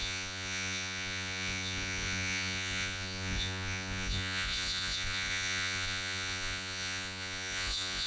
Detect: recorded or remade remade